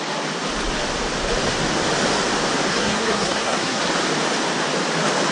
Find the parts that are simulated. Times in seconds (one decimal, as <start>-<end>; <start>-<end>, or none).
2.7-3.8

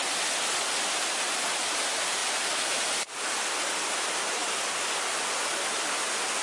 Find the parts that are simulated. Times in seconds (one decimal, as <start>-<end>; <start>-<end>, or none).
none

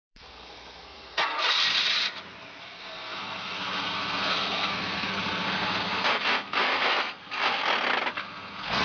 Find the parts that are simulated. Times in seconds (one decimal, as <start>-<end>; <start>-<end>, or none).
0.0-1.4; 2.6-7.6; 8.1-8.8

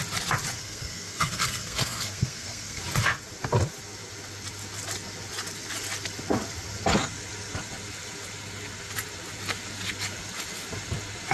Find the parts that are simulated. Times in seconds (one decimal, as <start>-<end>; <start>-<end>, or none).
0.6-2.8

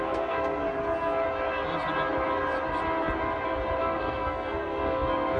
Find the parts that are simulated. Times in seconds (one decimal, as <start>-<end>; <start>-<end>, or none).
0.0-0.6; 3.8-5.4